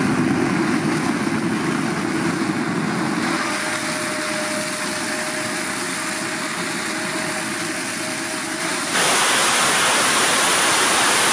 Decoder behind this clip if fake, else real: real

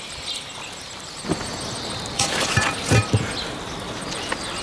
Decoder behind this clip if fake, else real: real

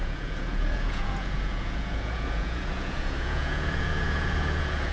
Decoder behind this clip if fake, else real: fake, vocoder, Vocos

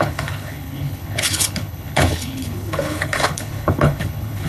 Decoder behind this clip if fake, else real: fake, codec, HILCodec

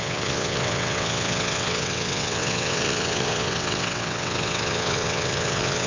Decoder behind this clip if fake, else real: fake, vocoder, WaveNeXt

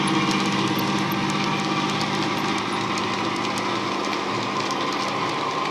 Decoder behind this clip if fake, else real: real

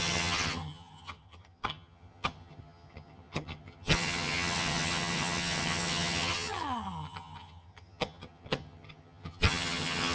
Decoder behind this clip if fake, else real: fake, vocoder, HiFi-GAN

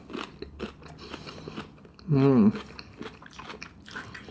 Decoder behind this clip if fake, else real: real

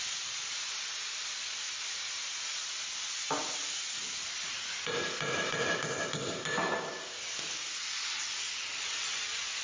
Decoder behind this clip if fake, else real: real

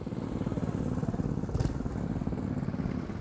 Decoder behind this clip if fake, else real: real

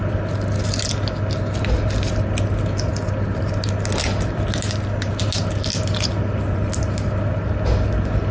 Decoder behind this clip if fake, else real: real